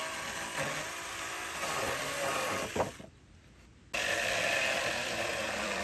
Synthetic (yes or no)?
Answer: no